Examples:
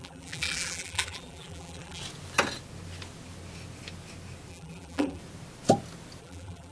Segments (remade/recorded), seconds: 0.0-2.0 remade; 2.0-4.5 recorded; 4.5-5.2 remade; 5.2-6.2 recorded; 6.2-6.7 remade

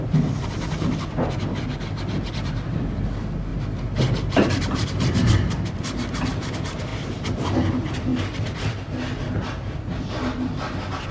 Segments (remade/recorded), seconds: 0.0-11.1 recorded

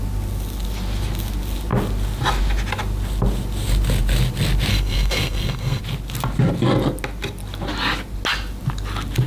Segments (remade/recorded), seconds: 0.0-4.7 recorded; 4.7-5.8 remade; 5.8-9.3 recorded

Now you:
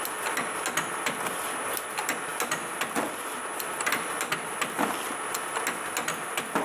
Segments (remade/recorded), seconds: 0.0-6.6 recorded